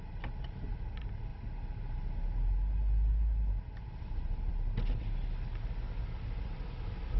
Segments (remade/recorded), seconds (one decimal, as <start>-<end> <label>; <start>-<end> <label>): 0.0-7.2 recorded